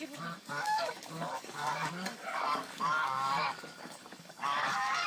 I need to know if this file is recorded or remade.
remade